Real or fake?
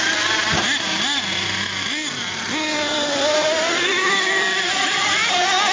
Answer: fake